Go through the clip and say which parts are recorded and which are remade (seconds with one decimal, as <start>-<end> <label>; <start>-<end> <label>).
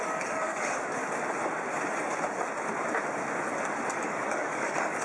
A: 0.0-1.0 remade; 1.0-4.0 recorded; 4.0-5.0 remade